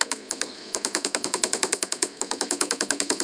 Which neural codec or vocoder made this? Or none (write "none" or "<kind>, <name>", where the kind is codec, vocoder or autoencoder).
codec, SNAC